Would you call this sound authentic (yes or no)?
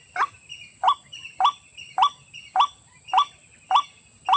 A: yes